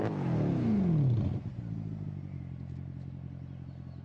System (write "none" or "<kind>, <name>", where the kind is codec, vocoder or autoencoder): none